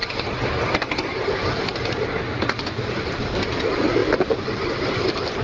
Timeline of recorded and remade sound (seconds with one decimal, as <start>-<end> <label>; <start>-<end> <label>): 0.0-5.4 recorded

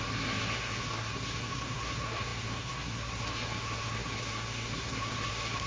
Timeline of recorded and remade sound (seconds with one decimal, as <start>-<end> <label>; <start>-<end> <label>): 0.0-5.7 remade